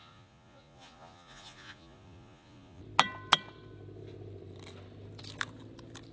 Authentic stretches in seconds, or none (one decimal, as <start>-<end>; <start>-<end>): 2.8-6.1